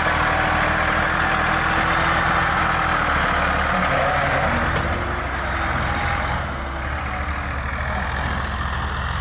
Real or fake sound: real